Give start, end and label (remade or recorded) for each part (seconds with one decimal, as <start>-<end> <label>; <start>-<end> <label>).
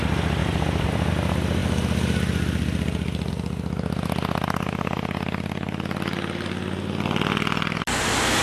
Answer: 0.0-0.4 recorded; 0.4-1.1 remade; 1.1-8.4 recorded